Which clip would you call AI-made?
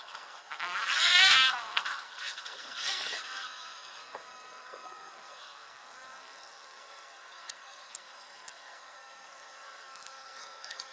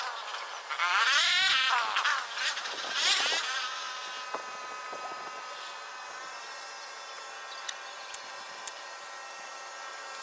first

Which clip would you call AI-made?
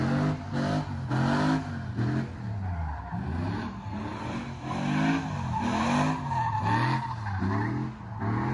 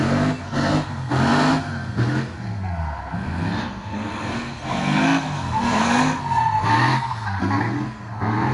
second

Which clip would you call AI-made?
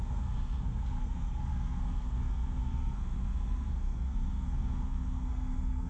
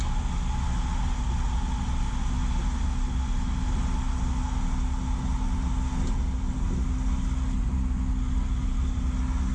first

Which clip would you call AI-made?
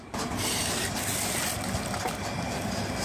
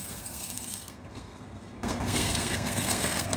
second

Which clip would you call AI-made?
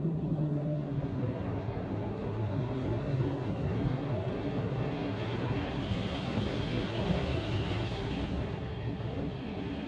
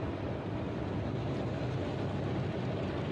first